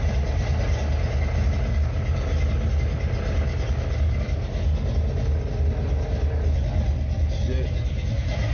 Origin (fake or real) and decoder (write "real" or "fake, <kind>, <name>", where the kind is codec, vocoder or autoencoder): real